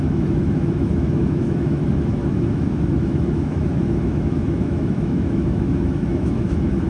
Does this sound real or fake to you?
fake